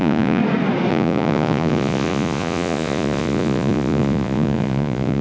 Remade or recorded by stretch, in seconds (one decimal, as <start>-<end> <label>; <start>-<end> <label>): 0.0-0.4 remade; 0.4-0.9 recorded; 0.9-5.2 remade